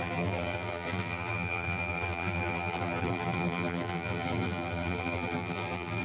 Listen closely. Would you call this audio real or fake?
fake